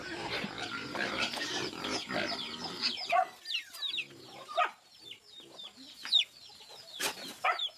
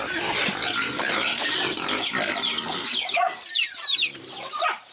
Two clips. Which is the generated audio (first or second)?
second